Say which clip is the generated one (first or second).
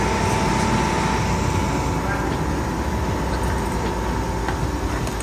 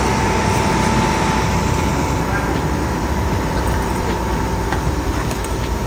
second